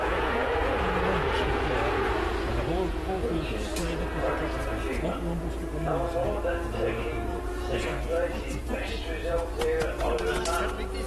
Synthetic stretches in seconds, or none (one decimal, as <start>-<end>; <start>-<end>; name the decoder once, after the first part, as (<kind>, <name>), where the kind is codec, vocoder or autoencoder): 0.0-3.7 (vocoder, Vocos); 6.9-7.9; 8.6-9.2